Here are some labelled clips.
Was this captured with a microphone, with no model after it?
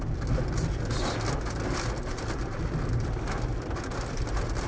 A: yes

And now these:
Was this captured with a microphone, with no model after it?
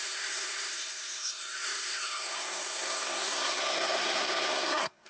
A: no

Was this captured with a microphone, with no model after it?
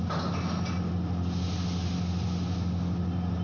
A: yes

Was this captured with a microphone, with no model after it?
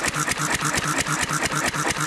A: yes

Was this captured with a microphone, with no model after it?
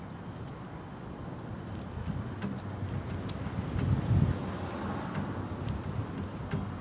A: yes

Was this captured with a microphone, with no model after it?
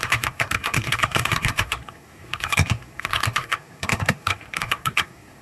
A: no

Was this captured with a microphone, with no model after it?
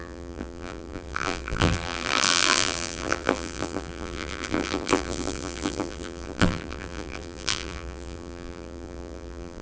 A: no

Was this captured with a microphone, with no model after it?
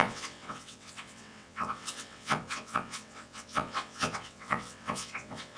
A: no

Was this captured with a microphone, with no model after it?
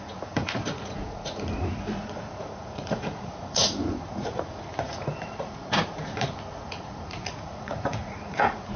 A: no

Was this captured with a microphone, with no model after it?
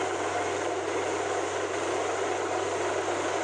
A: yes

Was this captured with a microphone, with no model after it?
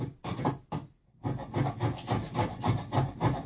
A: yes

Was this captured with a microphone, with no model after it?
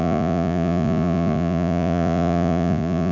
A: no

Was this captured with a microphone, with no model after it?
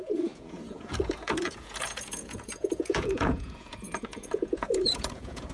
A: no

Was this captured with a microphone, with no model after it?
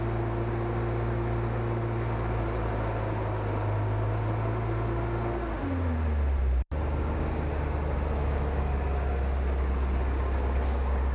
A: yes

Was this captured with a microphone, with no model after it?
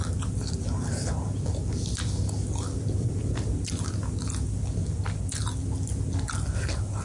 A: yes